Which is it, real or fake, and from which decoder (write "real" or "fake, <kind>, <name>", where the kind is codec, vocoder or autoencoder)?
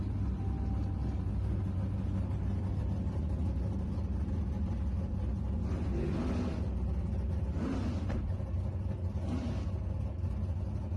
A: real